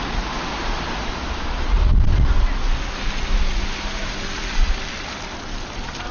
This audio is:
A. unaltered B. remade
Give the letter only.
A